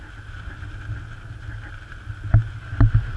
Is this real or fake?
real